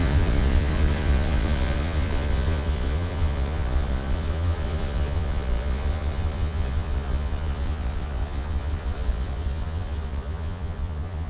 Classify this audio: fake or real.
fake